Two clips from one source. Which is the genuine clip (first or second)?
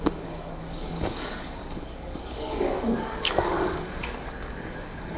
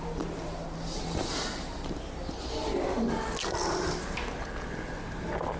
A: second